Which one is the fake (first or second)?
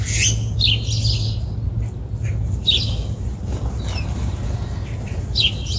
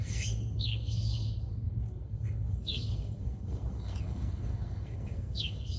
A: second